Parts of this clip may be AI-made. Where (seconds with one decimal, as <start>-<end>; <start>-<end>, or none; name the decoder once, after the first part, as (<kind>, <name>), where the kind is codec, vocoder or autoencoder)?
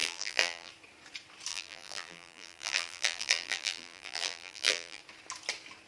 0.0-0.7 (vocoder, BigVGAN v2); 1.5-5.0